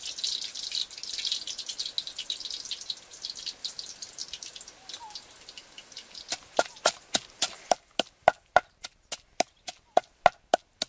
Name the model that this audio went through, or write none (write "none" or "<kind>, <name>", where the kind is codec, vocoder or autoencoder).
none